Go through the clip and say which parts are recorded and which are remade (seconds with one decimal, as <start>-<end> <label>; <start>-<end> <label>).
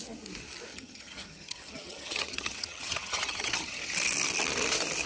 0.0-0.7 recorded; 0.7-3.8 remade; 3.8-5.1 recorded